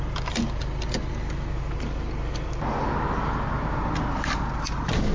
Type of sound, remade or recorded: recorded